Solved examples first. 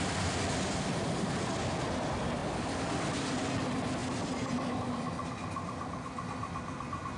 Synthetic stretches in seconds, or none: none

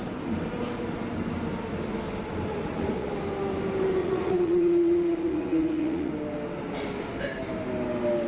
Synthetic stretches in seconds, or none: 2.5-3.1 (vocoder, Vocos); 4.0-6.1